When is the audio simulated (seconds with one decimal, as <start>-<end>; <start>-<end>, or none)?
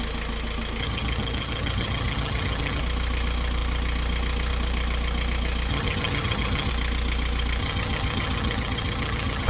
0.8-2.8; 5.7-6.7; 7.6-9.5